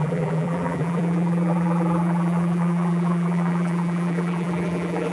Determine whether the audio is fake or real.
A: fake